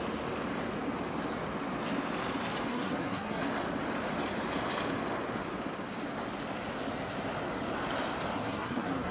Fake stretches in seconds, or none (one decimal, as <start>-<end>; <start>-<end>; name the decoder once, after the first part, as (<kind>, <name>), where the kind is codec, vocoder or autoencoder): 2.7-3.4 (codec, SNAC); 8.4-9.1

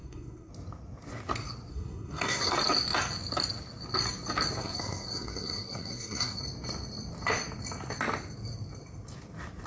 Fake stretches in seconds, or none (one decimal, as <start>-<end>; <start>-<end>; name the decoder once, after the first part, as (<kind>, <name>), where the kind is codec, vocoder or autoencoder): 0.0-0.5 (codec, SNAC); 1.7-2.5; 4.6-6.4

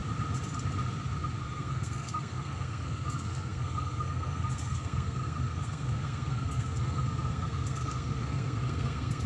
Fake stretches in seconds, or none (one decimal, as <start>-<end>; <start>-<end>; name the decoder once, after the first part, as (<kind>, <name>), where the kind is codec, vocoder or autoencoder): 1.4-9.3 (codec, SNAC)

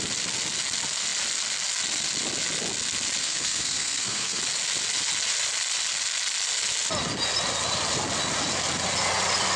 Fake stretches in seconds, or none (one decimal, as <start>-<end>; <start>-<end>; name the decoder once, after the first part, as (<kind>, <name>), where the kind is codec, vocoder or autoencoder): 3.2-4.4 (codec, SNAC)